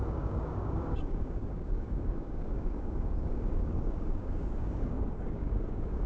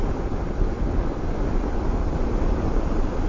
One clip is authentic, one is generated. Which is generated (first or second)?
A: first